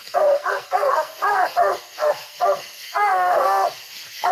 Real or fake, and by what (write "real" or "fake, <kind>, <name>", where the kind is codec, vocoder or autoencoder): fake, codec, SNAC